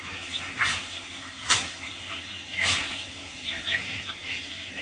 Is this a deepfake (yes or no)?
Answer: yes